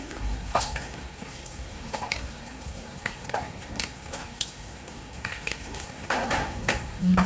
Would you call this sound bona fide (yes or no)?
no